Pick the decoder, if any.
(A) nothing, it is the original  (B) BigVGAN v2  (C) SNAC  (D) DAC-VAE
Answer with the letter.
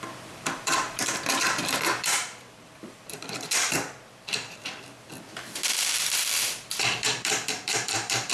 B